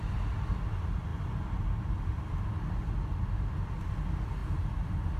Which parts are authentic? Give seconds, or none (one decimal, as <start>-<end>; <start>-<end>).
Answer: 1.1-3.8; 4.4-5.2